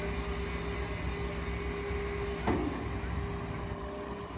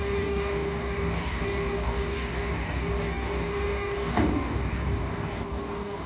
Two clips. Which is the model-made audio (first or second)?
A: second